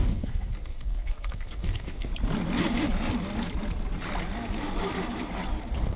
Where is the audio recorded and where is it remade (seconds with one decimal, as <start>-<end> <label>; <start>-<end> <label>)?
0.0-2.1 remade; 2.1-6.0 recorded